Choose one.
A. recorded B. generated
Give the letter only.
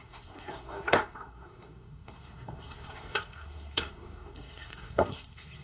B